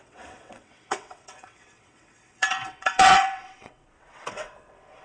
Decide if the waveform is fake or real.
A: fake